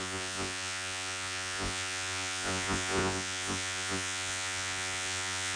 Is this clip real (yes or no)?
no